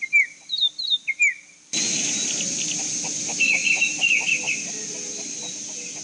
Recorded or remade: recorded